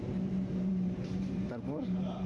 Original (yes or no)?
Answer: no